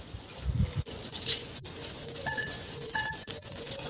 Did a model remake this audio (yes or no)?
yes